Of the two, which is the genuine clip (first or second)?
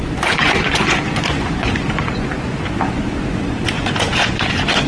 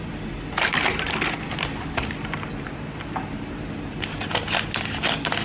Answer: second